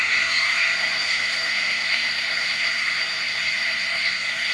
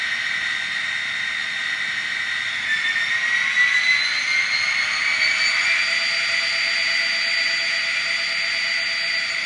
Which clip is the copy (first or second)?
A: first